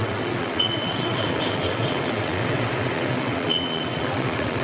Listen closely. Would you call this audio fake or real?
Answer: fake